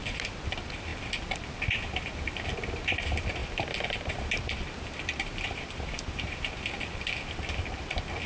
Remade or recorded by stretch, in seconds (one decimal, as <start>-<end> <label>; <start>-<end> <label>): 0.0-3.4 recorded; 3.4-6.6 remade; 6.6-8.3 recorded